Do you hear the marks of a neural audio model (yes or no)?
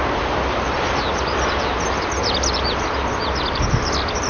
no